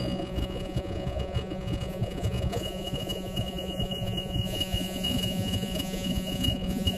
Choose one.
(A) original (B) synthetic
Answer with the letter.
B